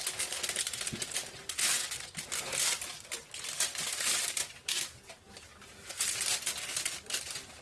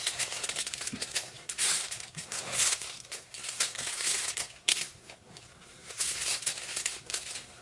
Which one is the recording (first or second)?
first